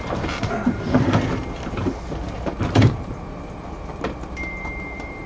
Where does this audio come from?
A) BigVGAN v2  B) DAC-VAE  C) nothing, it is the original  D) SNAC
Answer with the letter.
A